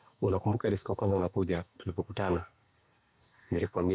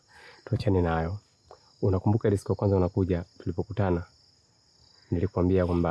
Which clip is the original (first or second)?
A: second